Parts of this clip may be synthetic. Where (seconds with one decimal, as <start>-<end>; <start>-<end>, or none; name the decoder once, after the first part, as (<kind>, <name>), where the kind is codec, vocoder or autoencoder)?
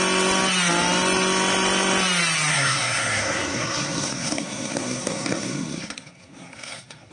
2.5-7.1 (codec, SNAC)